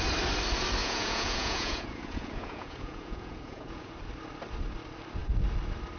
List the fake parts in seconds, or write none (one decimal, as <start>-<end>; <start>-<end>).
0.8-3.9